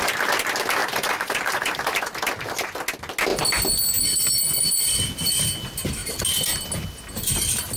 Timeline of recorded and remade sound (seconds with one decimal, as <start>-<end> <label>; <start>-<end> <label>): 0.0-0.8 recorded; 0.8-1.8 remade; 1.8-7.8 recorded